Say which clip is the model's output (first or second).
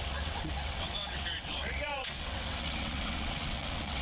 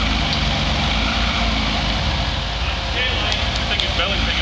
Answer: first